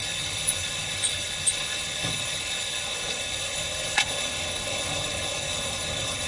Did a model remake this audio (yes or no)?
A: yes